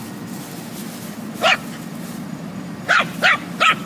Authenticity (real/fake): real